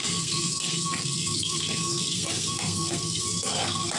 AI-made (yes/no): yes